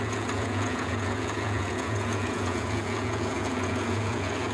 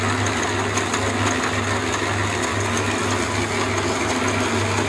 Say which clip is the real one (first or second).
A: second